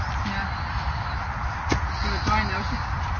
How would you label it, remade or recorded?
recorded